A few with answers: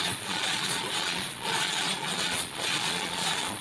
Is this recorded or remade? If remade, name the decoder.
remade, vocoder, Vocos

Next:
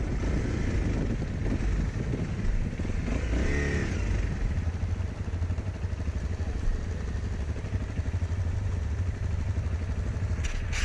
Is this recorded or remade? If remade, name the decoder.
recorded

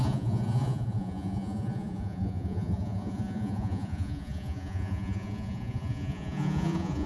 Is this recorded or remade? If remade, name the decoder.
remade, vocoder, Vocos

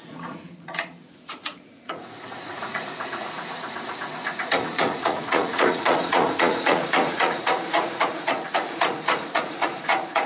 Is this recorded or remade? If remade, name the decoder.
remade, vocoder, Vocos